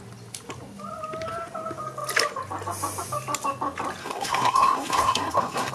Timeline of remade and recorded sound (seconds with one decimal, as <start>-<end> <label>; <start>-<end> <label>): 0.0-4.0 recorded; 4.0-5.7 remade